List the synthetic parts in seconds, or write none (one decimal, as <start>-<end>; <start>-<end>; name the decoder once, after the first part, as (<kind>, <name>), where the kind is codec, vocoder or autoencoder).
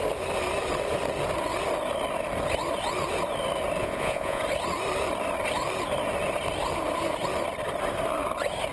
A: 3.8-4.4 (vocoder, Vocos)